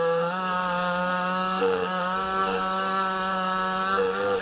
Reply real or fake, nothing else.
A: fake